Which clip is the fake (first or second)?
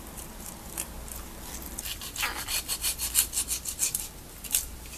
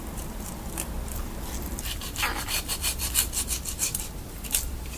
second